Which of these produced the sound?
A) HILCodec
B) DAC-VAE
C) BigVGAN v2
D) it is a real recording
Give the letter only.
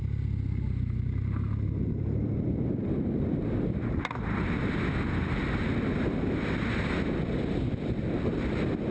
D